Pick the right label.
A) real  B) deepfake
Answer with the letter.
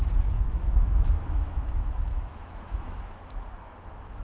B